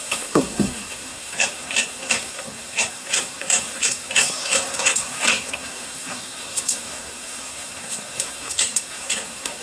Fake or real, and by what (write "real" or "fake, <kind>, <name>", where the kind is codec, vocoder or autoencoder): fake, codec, SNAC